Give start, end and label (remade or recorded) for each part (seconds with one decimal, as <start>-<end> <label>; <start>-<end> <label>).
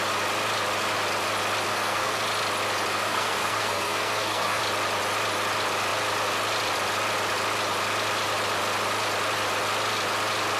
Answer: 0.0-1.7 recorded; 1.7-2.2 remade; 2.2-2.9 recorded; 2.9-4.6 remade; 4.6-10.6 recorded